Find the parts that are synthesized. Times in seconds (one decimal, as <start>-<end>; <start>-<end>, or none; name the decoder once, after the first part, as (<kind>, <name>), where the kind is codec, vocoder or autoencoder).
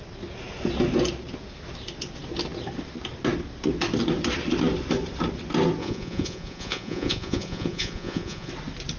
5.8-8.5 (vocoder, Vocos)